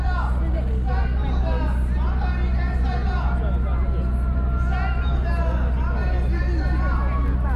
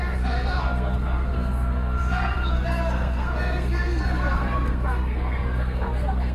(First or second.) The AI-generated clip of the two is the second